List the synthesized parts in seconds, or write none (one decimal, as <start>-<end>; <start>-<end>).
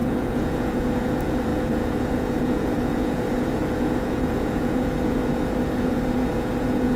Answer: 0.0-7.0